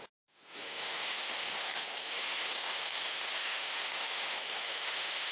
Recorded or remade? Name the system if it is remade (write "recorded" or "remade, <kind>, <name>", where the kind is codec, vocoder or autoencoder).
remade, autoencoder, DAC-VAE